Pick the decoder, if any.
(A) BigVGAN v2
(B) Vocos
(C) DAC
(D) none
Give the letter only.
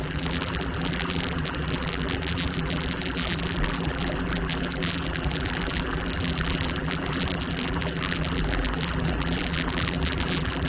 A